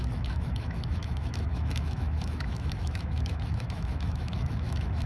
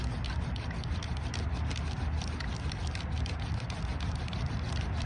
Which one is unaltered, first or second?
second